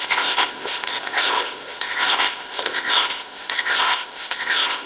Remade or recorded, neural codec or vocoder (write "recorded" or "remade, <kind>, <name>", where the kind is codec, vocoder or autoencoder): remade, codec, ZipCodec